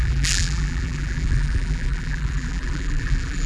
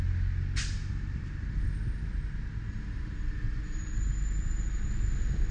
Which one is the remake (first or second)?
first